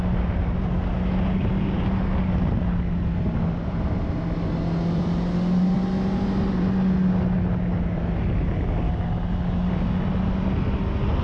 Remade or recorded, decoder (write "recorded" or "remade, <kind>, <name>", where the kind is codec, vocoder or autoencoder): recorded